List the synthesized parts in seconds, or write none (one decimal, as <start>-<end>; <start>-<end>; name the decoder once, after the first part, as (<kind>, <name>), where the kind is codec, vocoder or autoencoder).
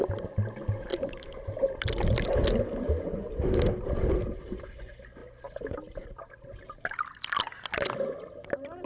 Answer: none